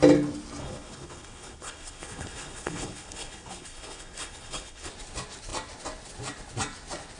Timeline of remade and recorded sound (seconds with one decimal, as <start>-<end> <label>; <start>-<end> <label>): 0.0-0.6 recorded; 0.6-4.9 remade; 4.9-7.2 recorded